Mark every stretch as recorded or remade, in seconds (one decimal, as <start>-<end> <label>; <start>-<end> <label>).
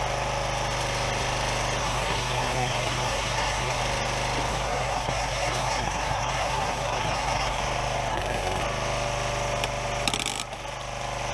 0.0-1.8 recorded; 1.8-3.8 remade; 3.8-4.5 recorded; 4.5-7.6 remade; 7.6-8.1 recorded; 8.1-8.6 remade; 8.6-11.3 recorded